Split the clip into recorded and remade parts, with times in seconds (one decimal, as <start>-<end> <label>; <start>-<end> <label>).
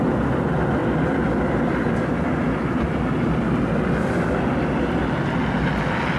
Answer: 0.0-6.2 recorded